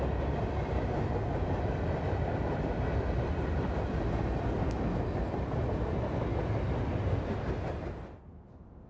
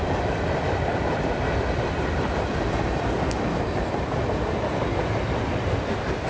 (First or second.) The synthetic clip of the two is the second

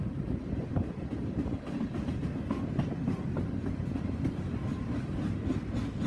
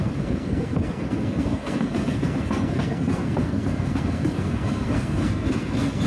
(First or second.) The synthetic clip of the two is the second